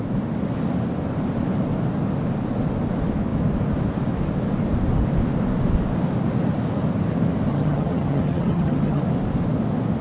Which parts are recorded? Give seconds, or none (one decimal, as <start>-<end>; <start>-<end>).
0.0-7.5; 9.0-10.0